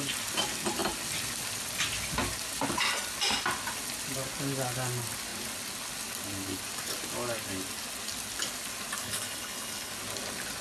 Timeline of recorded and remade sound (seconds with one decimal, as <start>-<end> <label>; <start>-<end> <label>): 0.0-9.0 recorded; 9.0-9.9 remade; 9.9-10.6 recorded